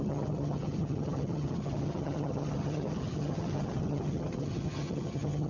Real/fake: fake